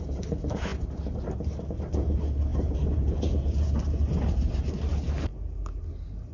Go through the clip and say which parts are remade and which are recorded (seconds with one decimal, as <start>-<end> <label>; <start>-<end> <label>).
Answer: 0.0-2.5 recorded; 2.5-4.6 remade; 4.6-6.3 recorded